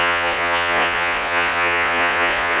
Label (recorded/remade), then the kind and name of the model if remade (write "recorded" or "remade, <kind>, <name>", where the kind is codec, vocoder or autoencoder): remade, vocoder, Vocos